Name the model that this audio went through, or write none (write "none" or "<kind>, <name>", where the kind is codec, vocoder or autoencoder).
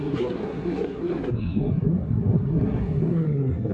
codec, SNAC